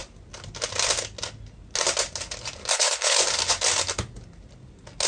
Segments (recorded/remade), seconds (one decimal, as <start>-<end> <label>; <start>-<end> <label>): 0.0-2.7 recorded; 2.7-3.2 remade; 3.2-5.1 recorded

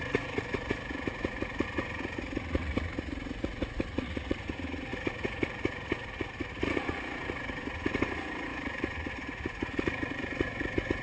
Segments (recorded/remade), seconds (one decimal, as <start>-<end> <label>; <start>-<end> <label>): 0.0-11.0 remade